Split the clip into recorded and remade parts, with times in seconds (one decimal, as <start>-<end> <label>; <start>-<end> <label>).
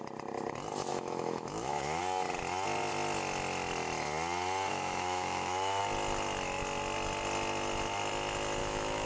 0.0-0.9 recorded; 0.9-2.0 remade; 2.0-4.7 recorded; 4.7-5.8 remade; 5.8-8.6 recorded; 8.6-9.1 remade